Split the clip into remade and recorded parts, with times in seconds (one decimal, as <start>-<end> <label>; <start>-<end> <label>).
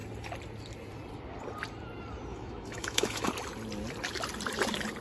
0.0-2.3 recorded; 2.3-3.3 remade; 3.3-5.0 recorded